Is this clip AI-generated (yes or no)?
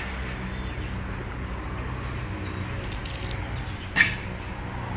no